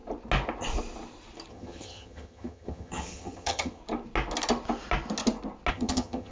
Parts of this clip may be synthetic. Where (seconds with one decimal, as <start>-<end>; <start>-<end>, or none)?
1.5-3.8; 5.7-6.3